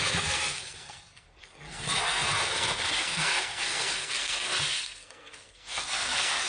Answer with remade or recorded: remade